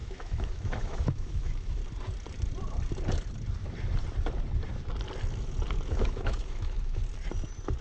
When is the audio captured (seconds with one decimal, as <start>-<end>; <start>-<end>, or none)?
1.8-5.9; 7.0-7.8